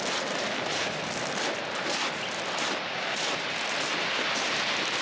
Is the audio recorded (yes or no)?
yes